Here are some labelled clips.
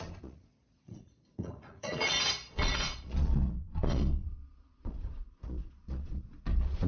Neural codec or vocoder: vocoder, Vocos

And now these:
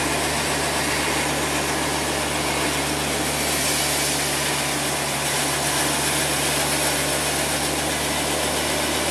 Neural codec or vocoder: none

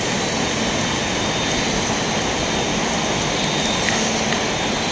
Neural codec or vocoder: none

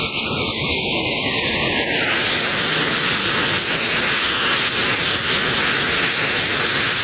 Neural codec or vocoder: none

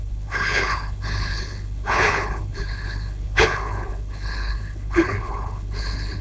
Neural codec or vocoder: codec, HILCodec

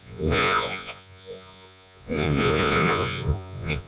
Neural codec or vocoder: vocoder, Vocos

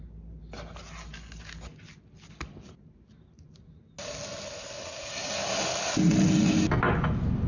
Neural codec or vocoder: none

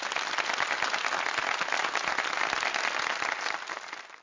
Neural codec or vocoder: none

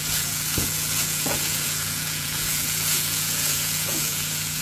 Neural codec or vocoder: vocoder, Vocos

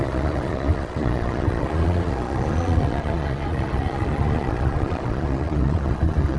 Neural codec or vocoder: vocoder, Vocos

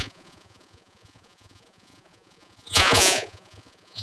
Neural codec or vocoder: vocoder, Vocos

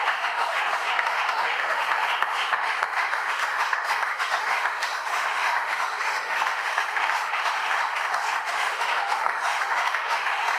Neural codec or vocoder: autoencoder, DAC-VAE